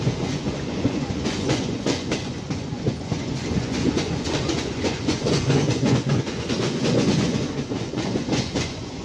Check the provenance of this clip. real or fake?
fake